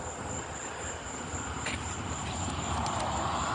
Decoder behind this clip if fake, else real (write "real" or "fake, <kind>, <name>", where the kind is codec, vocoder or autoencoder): real